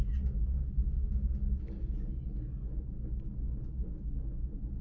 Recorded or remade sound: recorded